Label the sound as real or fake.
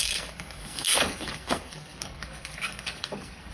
fake